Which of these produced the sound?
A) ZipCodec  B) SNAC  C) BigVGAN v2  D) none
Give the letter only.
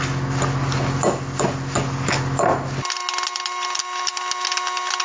D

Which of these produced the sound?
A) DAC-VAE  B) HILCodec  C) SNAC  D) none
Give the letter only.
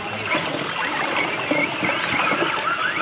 D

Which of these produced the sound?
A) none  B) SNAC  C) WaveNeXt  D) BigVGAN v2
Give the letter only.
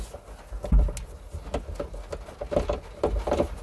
A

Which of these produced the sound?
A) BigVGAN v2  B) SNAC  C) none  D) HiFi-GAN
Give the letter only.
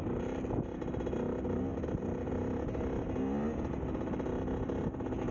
C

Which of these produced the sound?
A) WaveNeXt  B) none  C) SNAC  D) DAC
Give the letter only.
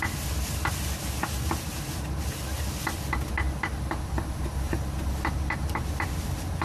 B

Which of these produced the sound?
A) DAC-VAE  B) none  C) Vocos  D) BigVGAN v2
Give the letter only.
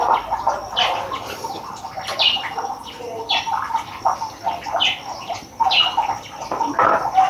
B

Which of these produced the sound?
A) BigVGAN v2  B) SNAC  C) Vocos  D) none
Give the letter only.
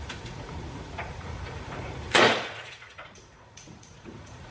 C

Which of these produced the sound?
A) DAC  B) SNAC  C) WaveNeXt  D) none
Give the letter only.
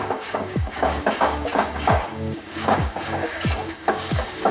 A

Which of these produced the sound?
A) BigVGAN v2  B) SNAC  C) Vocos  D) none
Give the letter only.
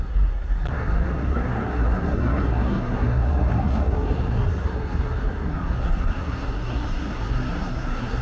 B